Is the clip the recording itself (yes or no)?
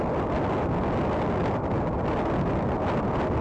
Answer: yes